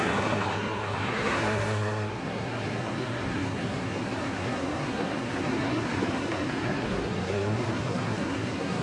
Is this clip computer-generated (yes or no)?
yes